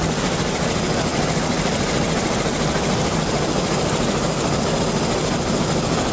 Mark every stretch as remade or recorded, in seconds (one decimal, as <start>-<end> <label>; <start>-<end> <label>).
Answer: 0.0-6.1 recorded